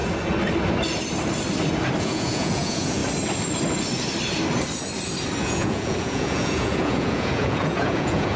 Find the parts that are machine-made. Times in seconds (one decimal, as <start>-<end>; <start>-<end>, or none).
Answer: 2.0-3.0; 5.4-8.4